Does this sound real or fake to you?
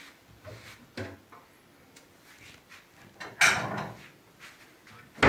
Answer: real